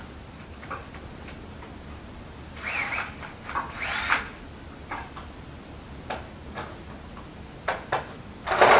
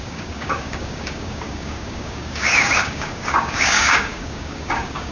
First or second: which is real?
first